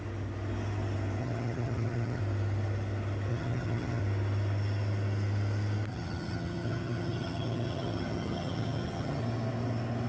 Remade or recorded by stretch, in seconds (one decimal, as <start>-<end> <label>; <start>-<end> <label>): 0.0-1.2 recorded; 1.2-2.2 remade; 2.2-3.3 recorded; 3.3-4.0 remade; 4.0-5.9 recorded; 5.9-9.2 remade; 9.2-10.1 recorded